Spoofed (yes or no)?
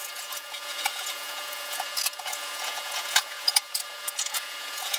yes